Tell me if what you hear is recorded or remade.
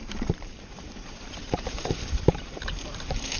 remade